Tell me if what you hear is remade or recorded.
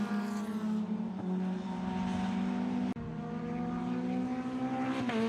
recorded